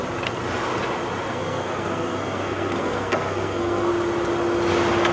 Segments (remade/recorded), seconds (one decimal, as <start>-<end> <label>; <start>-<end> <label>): 0.0-1.3 recorded; 1.3-3.9 remade; 3.9-5.1 recorded